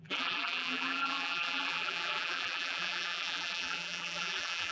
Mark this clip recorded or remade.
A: remade